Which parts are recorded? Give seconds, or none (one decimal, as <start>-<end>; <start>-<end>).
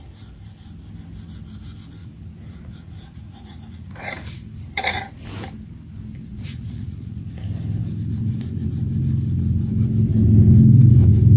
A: 0.0-2.0; 5.0-6.3; 7.2-11.4